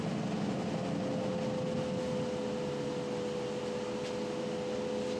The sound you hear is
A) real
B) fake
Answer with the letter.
A